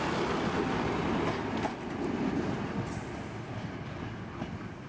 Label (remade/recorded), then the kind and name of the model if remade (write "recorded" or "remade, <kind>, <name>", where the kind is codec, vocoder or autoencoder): recorded